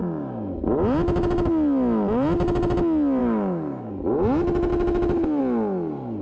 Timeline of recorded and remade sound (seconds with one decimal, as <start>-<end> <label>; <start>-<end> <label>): 0.0-3.2 recorded; 3.2-4.0 remade; 4.0-4.7 recorded; 4.7-5.4 remade; 5.4-6.2 recorded